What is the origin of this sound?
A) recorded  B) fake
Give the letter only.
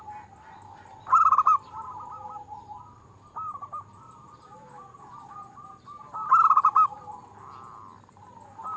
A